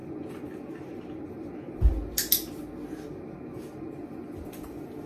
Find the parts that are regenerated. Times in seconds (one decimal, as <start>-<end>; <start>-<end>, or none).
1.0-1.9; 4.0-5.1